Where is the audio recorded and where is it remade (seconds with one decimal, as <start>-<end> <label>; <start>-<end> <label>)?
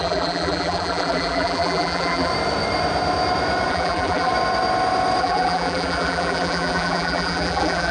0.0-2.3 remade; 2.3-3.7 recorded; 3.7-4.3 remade; 4.3-5.2 recorded; 5.2-7.9 remade